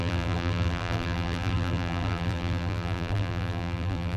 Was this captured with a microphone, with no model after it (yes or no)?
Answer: no